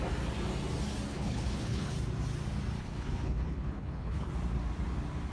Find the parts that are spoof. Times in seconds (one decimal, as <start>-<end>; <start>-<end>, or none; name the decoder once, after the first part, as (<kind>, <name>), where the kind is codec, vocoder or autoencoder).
1.1-1.9 (codec, HILCodec); 2.8-4.3